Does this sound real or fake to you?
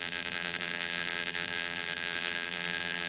fake